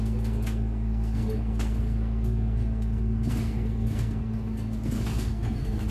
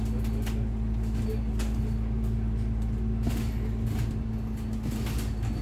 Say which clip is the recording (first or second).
second